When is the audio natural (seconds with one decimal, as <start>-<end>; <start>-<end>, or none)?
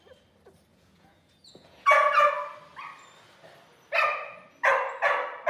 0.0-0.7; 2.3-5.5